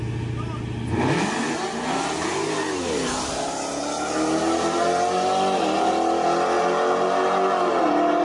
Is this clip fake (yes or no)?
no